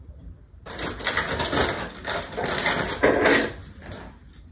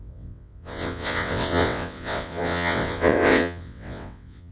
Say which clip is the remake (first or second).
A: second